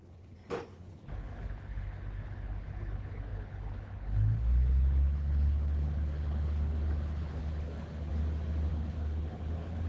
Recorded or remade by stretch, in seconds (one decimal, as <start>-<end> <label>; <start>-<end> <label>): 0.0-8.1 remade; 8.1-8.7 recorded; 8.7-9.9 remade